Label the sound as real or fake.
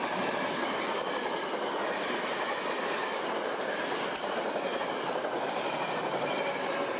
real